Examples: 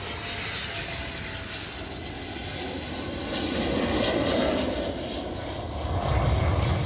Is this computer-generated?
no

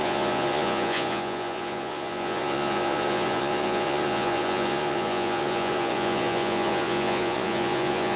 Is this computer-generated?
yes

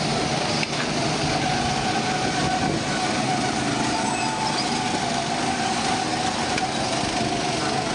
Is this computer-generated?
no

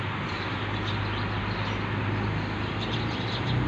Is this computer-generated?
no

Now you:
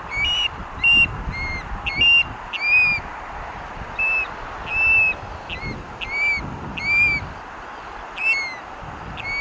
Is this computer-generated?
no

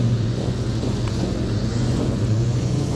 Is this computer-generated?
yes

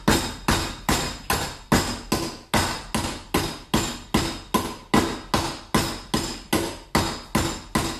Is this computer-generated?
no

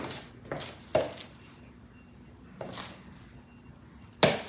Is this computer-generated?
no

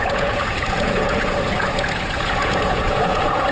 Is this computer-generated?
yes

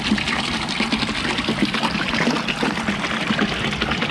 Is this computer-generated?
no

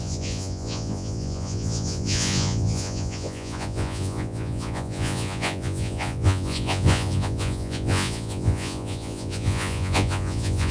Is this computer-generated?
yes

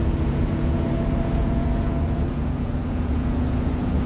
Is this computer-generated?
yes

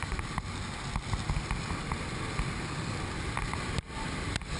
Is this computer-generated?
no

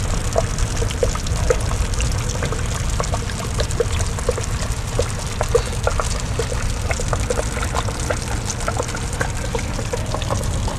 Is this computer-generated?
no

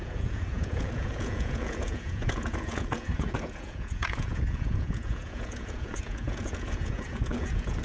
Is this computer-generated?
yes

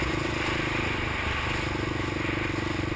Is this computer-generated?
no